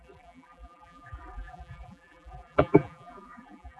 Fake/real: fake